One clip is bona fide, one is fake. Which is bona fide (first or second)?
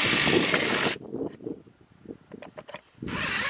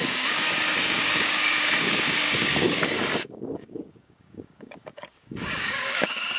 first